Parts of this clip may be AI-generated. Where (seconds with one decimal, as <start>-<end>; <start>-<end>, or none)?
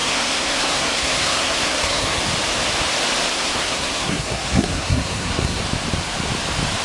0.0-2.2; 3.3-5.6